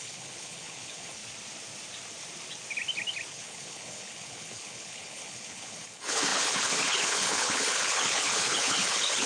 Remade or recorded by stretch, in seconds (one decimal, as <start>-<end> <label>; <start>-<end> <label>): 0.0-1.2 remade; 1.2-3.3 recorded; 3.3-9.3 remade